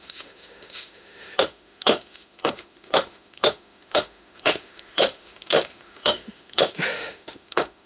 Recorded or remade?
remade